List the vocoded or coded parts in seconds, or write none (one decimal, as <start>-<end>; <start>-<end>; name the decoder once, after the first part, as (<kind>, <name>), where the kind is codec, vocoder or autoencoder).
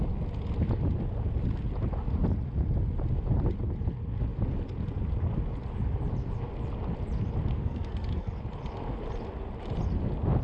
7.5-8.3 (codec, SNAC)